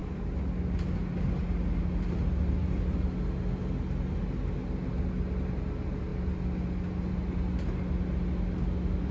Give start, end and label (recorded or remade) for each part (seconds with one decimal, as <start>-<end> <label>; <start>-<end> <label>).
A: 0.0-9.1 recorded